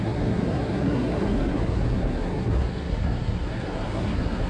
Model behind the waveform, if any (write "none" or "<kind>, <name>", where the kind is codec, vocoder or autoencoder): codec, SNAC